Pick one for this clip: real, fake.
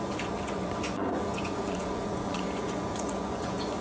fake